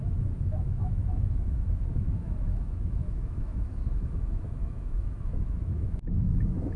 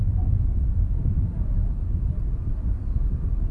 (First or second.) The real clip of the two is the second